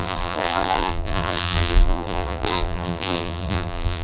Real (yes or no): no